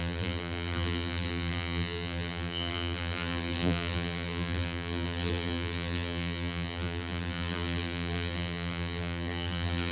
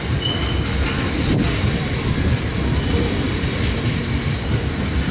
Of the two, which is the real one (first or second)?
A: second